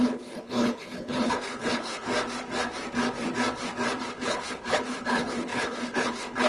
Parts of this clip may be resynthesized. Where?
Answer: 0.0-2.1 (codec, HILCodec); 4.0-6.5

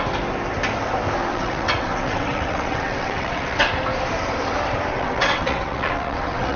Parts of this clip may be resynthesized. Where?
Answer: 1.3-3.7 (vocoder, WaveNeXt); 4.9-6.6

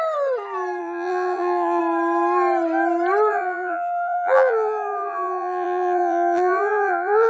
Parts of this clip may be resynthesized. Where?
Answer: 0.8-1.8 (vocoder, BigVGAN v2); 3.3-7.3